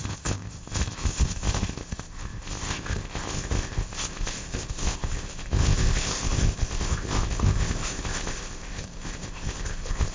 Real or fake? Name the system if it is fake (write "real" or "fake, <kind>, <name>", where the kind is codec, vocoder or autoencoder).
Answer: fake, codec, ZipCodec